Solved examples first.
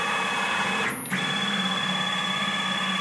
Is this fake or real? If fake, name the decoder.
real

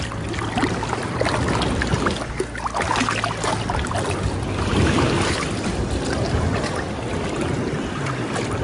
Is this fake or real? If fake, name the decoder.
real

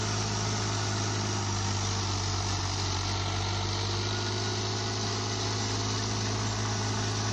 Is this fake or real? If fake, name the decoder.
real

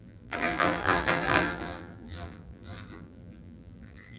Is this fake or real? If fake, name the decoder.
fake, vocoder, BigVGAN v2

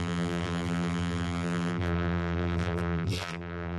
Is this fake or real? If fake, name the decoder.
fake, vocoder, BigVGAN v2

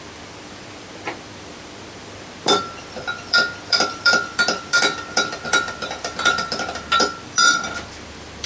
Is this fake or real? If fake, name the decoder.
fake, vocoder, BigVGAN v2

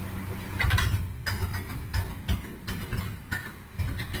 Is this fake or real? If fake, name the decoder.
real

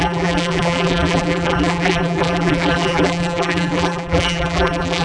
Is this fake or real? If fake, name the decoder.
fake, vocoder, BigVGAN v2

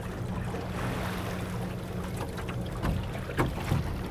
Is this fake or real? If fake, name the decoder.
real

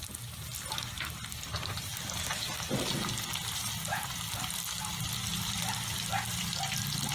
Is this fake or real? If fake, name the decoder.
real